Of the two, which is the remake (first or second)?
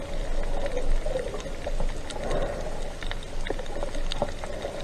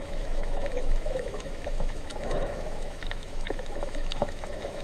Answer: second